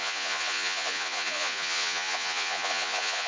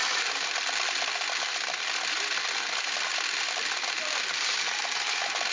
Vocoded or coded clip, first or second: first